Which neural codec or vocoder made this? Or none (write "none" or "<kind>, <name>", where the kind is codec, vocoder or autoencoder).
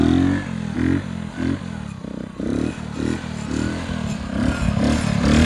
none